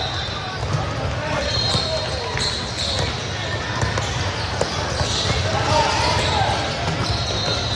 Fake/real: real